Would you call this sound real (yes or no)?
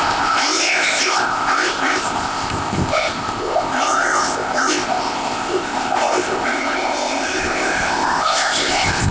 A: no